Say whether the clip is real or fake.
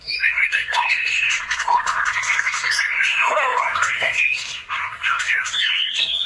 fake